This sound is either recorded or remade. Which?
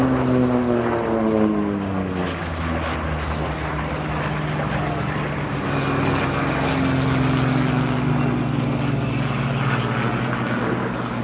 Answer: recorded